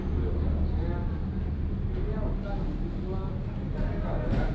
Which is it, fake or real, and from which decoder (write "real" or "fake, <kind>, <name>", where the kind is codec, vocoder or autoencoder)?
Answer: real